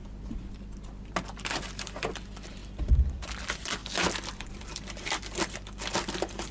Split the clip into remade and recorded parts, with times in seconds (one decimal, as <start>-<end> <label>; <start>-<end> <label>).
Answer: 0.0-1.7 recorded; 1.7-3.8 remade; 3.8-4.4 recorded; 4.4-6.5 remade